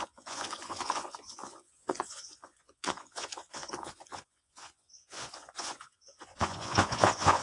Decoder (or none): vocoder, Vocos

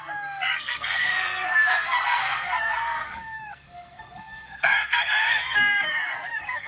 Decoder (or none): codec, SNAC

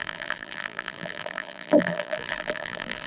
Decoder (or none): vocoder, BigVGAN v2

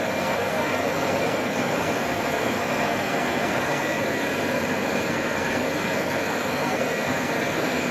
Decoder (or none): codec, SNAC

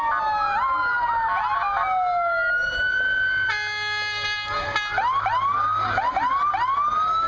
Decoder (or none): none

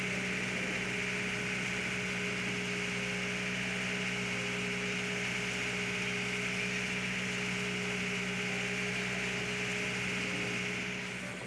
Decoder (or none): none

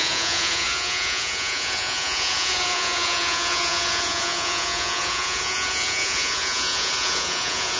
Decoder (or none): vocoder, Vocos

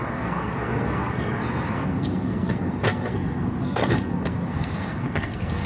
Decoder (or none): codec, SNAC